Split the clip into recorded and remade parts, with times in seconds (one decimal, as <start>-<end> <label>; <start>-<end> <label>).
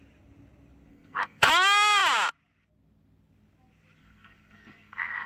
0.0-0.9 recorded; 0.9-1.5 remade; 1.5-4.0 recorded; 4.0-5.3 remade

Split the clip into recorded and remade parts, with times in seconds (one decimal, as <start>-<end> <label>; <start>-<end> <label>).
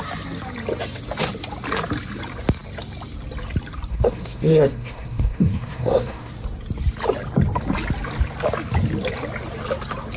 0.0-3.9 recorded; 3.9-6.3 remade; 6.3-10.2 recorded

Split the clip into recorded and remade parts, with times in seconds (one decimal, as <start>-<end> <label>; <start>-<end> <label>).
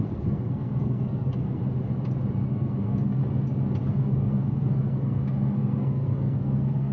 0.0-1.6 remade; 1.6-2.5 recorded; 2.5-3.2 remade; 3.2-3.9 recorded; 3.9-6.9 remade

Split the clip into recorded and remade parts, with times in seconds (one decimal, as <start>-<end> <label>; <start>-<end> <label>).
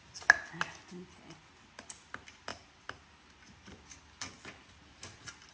0.0-5.5 recorded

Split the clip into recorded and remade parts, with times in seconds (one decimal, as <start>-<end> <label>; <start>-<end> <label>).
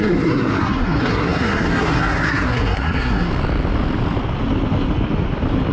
0.0-3.3 remade; 3.3-5.7 recorded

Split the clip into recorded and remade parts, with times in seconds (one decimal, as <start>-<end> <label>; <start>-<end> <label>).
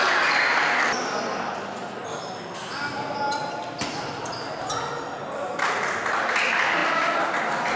0.0-7.8 recorded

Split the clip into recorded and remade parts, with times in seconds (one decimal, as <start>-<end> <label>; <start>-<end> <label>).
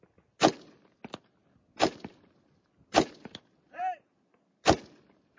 0.0-5.4 recorded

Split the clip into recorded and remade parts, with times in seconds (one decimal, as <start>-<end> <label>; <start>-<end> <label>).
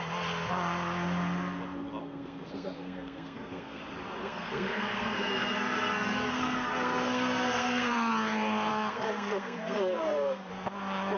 0.0-2.0 recorded; 2.0-3.8 remade; 3.8-4.2 recorded; 4.2-8.1 remade; 8.1-8.7 recorded; 8.7-10.5 remade; 10.5-11.2 recorded